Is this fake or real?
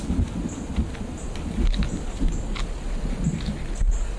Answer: real